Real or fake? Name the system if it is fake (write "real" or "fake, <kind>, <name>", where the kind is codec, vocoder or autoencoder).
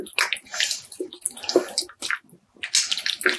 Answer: real